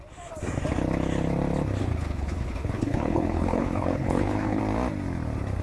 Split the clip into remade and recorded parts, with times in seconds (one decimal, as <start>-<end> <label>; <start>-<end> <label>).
0.0-1.8 recorded; 1.8-4.6 remade; 4.6-5.6 recorded